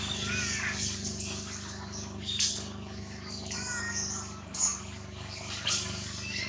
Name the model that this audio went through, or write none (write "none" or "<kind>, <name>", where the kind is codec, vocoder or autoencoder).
codec, DAC